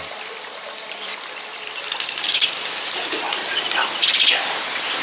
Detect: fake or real fake